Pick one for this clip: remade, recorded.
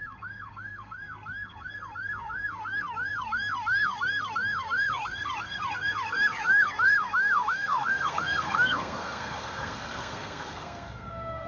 remade